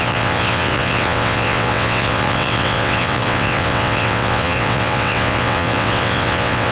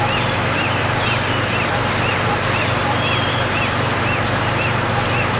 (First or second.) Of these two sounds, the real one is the second